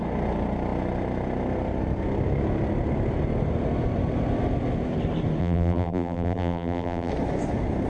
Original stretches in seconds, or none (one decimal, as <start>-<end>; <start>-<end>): 0.0-5.4; 7.1-7.9